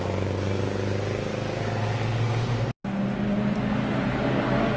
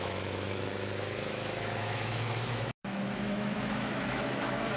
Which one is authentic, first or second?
first